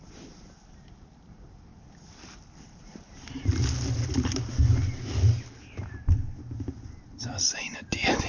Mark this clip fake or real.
real